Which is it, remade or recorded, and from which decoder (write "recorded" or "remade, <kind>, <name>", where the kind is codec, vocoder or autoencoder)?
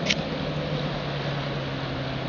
recorded